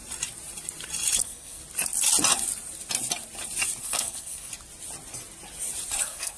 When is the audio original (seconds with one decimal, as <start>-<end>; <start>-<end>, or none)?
0.0-1.2; 1.6-3.8; 4.5-6.0